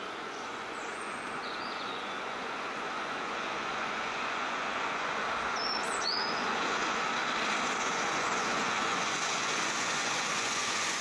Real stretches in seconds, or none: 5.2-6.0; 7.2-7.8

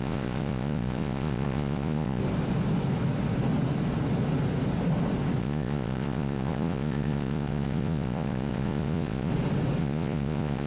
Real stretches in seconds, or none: 2.2-5.4; 9.3-9.8

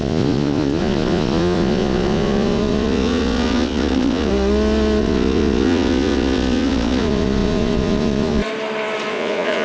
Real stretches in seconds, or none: 4.3-5.0; 8.4-9.1

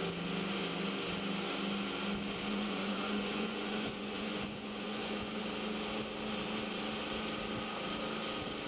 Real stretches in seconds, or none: 0.0-2.5; 5.4-8.7

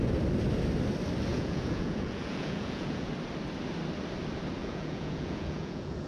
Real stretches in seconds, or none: 0.0-1.3; 3.1-4.6

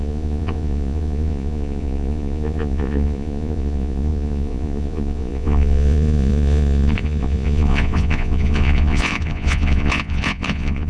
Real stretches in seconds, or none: none